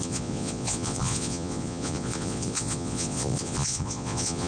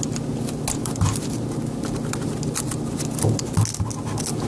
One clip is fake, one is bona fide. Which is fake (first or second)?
first